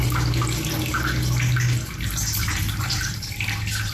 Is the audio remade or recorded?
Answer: recorded